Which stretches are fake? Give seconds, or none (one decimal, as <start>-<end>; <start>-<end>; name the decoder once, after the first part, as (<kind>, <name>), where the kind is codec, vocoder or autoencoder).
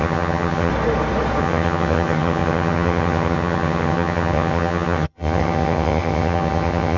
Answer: 0.0-0.7 (vocoder, HiFi-GAN); 1.4-7.0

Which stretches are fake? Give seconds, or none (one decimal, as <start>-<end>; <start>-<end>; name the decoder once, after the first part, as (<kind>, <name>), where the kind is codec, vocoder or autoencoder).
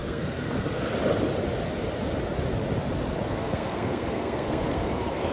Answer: 0.0-0.9 (codec, SNAC); 3.3-5.3